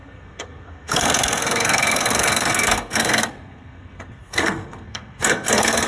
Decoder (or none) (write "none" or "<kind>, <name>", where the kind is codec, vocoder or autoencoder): codec, SNAC